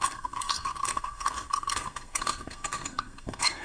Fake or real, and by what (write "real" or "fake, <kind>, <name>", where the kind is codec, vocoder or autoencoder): fake, codec, SNAC